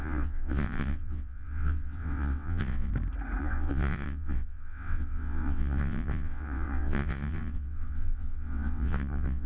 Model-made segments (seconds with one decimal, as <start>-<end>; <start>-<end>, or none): 0.0-2.9; 3.4-9.5